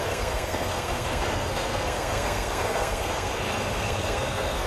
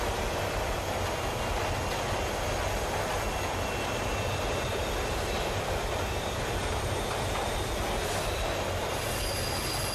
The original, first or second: second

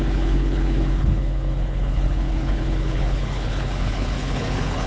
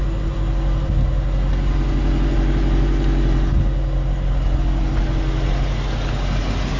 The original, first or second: second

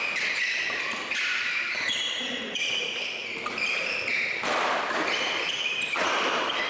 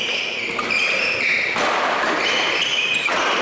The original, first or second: second